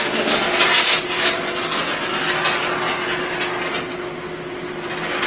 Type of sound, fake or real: real